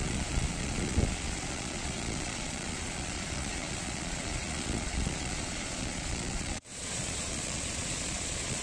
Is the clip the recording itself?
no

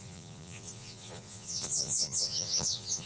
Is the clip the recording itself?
no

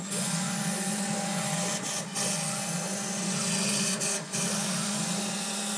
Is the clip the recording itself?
no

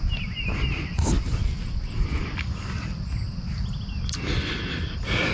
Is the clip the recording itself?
yes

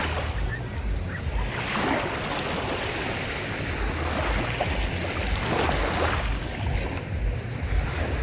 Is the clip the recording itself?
yes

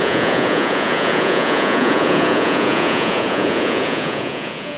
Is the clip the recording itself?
no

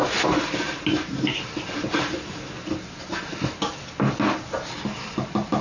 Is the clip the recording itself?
yes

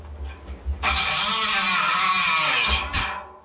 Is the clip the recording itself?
yes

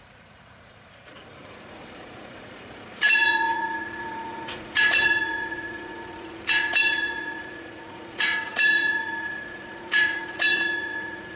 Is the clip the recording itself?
no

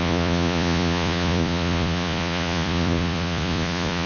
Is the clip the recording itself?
no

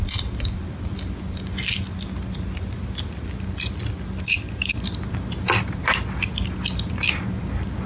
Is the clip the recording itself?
yes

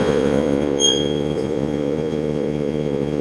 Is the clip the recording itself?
no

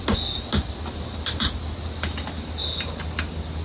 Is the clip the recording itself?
yes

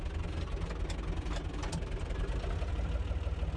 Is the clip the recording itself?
yes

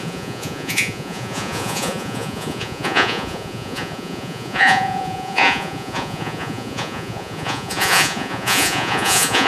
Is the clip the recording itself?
no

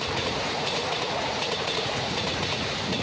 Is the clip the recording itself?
no